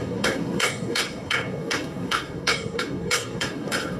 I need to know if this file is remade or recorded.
remade